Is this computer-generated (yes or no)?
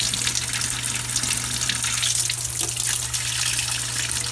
no